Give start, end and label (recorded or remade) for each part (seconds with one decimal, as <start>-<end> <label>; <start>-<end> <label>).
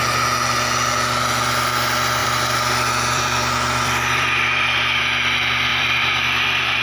0.0-2.2 recorded; 2.2-5.0 remade; 5.0-5.7 recorded; 5.7-6.8 remade